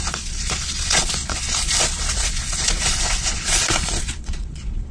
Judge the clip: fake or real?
fake